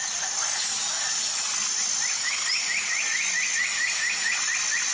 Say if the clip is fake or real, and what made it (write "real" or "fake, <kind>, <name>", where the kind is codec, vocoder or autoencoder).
real